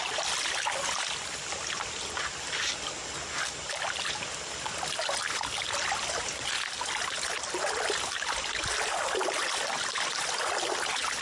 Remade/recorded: recorded